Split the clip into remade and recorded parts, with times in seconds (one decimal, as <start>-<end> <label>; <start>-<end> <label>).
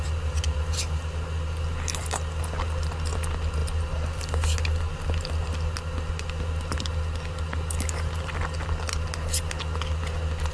0.0-10.5 recorded